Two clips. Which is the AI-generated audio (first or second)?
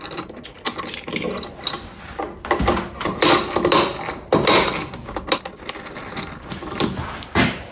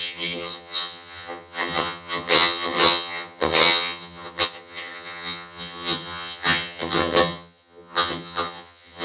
second